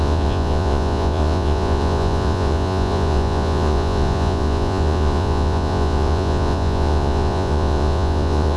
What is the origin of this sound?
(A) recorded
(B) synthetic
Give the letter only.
B